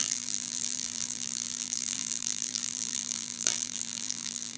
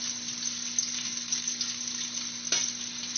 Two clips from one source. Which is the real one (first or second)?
second